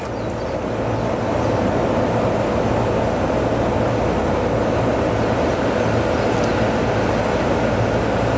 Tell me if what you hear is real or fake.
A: real